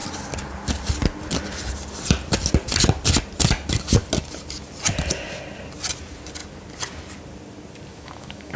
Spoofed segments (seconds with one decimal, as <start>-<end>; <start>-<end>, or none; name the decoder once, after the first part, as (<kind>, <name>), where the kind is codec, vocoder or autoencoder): 7.9-8.6 (autoencoder, DAC-VAE)